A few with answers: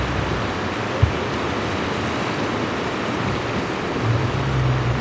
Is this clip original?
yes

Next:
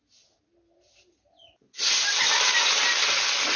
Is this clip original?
yes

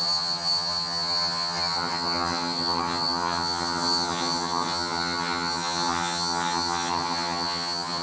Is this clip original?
no